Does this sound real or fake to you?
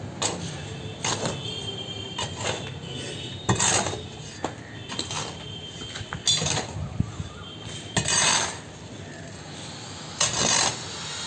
real